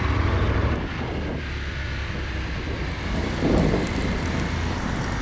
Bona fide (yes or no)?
yes